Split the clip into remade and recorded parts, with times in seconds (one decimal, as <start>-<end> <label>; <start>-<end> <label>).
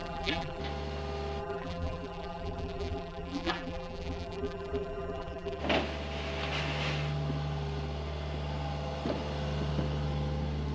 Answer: 0.0-0.6 remade; 0.6-1.4 recorded; 1.4-5.6 remade; 5.6-10.7 recorded